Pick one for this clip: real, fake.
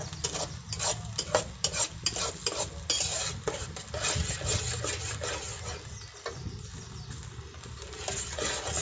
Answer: real